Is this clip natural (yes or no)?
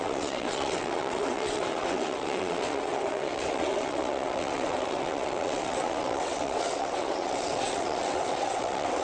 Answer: no